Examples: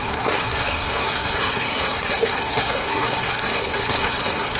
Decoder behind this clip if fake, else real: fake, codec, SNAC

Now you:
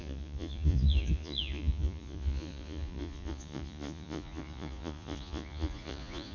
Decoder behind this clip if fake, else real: fake, vocoder, Vocos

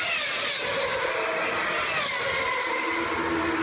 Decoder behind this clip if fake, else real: real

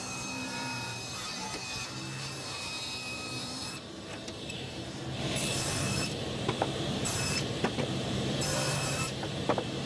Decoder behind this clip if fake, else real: fake, vocoder, BigVGAN v2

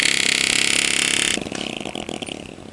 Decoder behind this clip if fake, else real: real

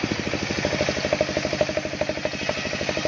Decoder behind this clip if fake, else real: real